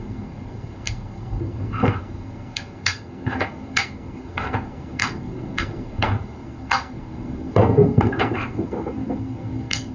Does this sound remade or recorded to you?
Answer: remade